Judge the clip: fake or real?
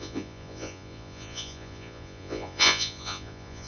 fake